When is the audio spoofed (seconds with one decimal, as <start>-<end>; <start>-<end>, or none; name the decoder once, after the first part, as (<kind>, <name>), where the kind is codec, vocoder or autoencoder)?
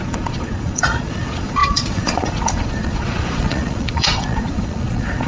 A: 0.0-5.3 (vocoder, Vocos)